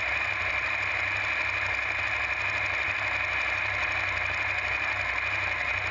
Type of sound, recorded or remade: recorded